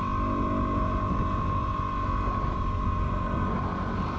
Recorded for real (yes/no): yes